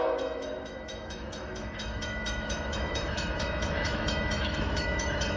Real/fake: fake